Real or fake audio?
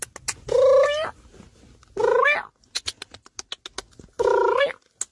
real